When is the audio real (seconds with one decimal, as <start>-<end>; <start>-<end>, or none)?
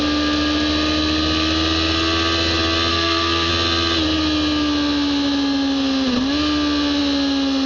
0.0-2.9; 3.5-7.7